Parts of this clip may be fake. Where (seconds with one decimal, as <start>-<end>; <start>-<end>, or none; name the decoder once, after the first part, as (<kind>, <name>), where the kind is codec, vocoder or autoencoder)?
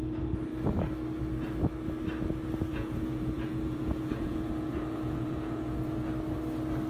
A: 2.7-6.1 (vocoder, Vocos)